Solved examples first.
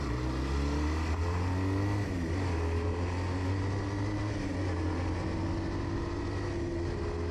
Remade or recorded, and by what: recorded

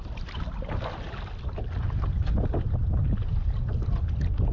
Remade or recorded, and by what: recorded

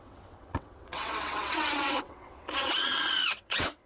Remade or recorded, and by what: remade, vocoder, WaveNeXt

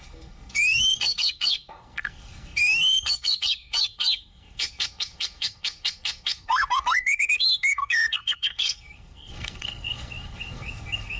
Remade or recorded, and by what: remade, codec, SNAC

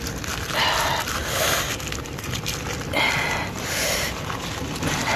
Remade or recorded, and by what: remade, vocoder, BigVGAN v2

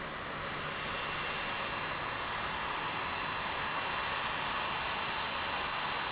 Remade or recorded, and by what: recorded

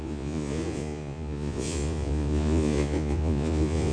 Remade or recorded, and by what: remade, vocoder, Vocos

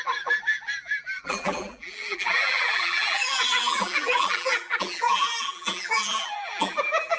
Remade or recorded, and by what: remade, vocoder, BigVGAN v2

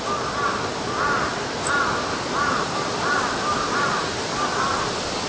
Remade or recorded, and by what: recorded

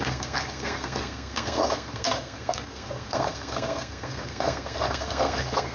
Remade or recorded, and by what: remade, codec, SNAC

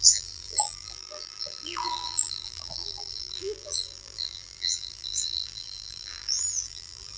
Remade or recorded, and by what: remade, vocoder, BigVGAN v2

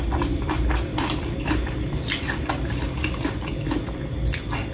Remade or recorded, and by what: recorded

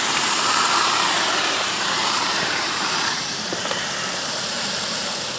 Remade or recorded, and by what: remade, vocoder, BigVGAN v2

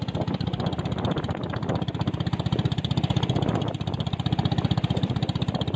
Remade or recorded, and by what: recorded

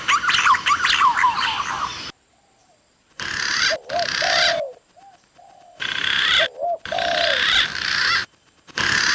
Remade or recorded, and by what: remade, vocoder, BigVGAN v2